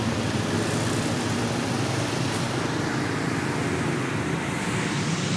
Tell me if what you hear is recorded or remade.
recorded